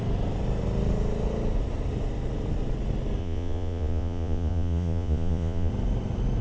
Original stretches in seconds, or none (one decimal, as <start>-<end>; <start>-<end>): 0.0-3.2; 5.7-6.4